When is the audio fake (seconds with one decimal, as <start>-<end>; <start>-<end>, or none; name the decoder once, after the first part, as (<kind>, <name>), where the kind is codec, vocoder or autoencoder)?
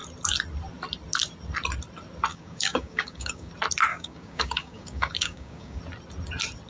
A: 2.3-3.5 (codec, DAC); 3.9-5.8